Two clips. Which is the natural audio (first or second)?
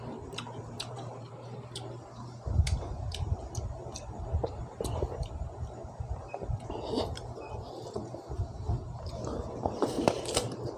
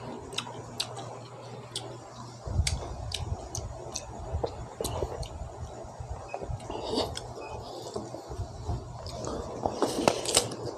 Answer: second